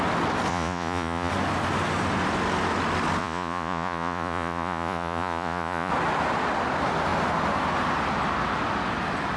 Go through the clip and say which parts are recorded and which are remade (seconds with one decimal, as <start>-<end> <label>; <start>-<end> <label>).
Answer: 0.0-0.5 recorded; 0.5-1.3 remade; 1.3-3.2 recorded; 3.2-5.9 remade; 5.9-9.4 recorded